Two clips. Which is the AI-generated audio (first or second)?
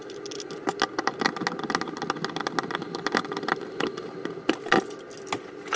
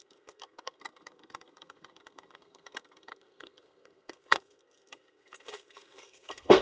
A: second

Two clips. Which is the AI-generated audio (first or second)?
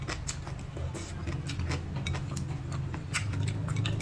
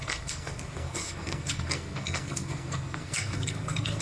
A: second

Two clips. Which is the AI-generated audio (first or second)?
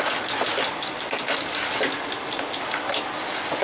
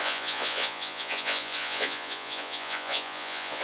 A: second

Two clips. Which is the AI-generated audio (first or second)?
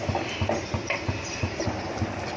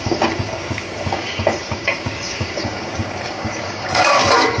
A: second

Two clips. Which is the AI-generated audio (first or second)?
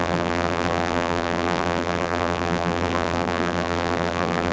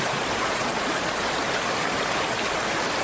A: first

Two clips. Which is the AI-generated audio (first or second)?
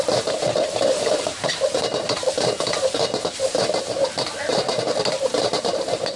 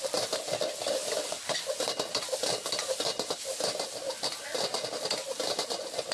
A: first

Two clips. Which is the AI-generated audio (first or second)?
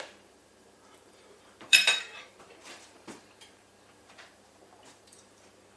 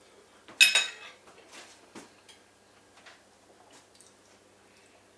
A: first